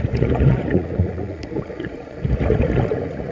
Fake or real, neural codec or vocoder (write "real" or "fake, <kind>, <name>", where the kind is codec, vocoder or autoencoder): fake, vocoder, Vocos